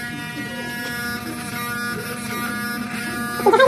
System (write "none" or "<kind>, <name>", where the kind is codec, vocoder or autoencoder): none